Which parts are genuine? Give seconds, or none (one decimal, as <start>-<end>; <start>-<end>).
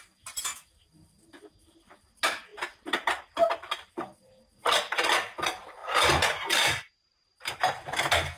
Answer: 0.0-5.8; 7.4-8.4